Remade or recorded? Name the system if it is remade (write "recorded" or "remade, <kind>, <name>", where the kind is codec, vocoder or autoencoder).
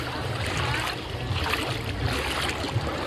remade, vocoder, BigVGAN v2